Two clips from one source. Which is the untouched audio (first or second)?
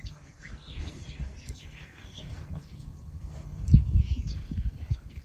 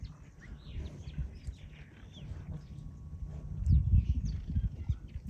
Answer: second